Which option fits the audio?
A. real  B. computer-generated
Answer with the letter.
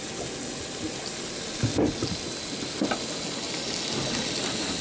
A